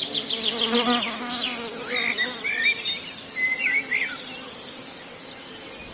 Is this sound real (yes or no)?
yes